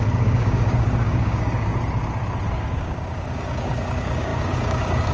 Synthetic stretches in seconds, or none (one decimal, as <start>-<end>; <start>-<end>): 0.0-1.7; 2.5-5.1